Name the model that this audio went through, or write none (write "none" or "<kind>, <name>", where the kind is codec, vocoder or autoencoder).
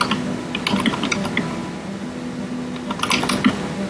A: none